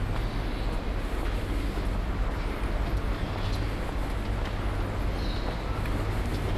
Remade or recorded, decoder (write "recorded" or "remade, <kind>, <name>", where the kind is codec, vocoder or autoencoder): recorded